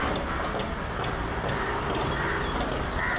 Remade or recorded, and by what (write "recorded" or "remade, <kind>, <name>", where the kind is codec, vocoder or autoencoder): recorded